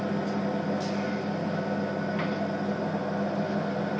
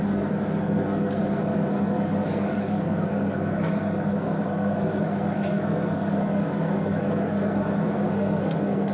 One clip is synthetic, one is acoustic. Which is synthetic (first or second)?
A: second